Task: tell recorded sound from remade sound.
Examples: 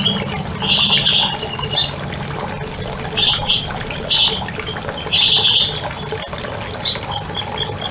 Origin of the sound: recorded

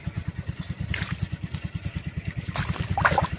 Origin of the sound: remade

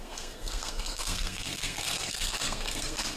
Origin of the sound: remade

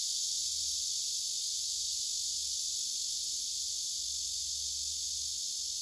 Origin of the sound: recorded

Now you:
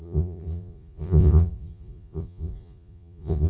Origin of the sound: remade